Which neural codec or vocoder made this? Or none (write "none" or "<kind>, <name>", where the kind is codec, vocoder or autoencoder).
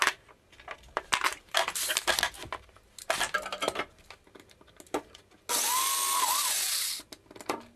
none